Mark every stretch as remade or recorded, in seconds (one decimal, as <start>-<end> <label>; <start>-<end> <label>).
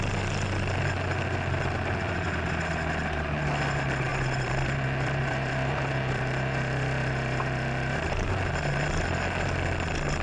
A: 0.0-4.1 recorded; 4.1-8.3 remade; 8.3-10.2 recorded